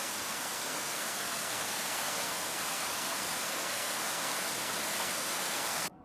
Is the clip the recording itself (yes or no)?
no